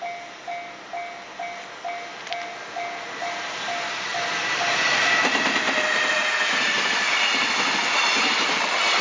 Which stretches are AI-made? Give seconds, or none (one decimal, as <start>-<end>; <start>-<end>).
none